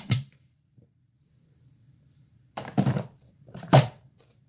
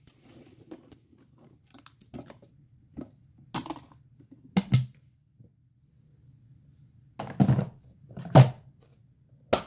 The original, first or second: second